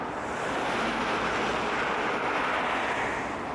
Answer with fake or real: real